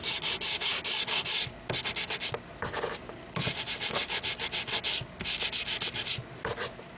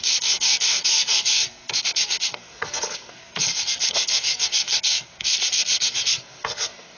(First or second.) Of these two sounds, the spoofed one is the second